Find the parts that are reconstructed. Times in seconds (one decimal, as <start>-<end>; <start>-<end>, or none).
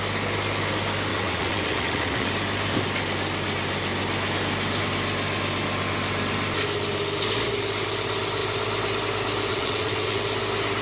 1.1-2.3; 9.5-10.2